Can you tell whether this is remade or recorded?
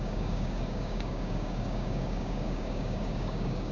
remade